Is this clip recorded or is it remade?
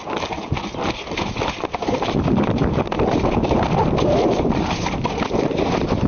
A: recorded